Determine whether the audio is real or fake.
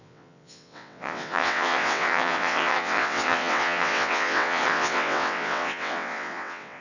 fake